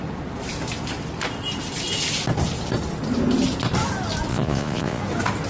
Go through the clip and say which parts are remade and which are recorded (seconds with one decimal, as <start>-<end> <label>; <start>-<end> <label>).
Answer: 0.0-4.3 recorded; 4.3-5.0 remade; 5.0-5.5 recorded